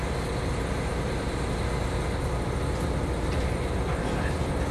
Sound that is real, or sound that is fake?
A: real